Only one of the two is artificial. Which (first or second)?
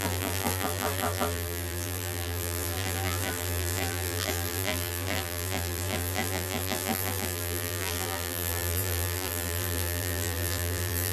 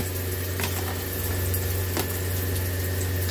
first